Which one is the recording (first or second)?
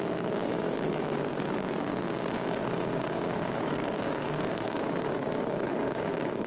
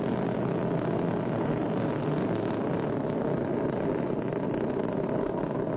second